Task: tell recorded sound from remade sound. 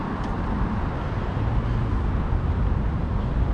recorded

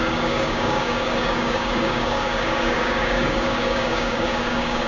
remade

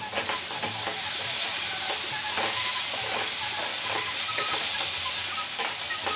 recorded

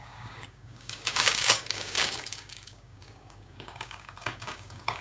remade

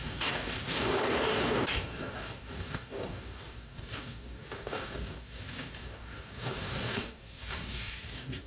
remade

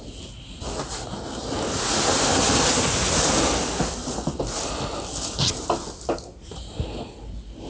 recorded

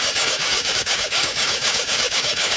remade